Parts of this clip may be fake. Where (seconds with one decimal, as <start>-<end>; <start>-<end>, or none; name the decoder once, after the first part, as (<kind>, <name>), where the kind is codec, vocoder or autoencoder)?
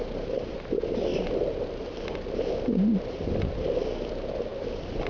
1.1-1.8 (vocoder, BigVGAN v2)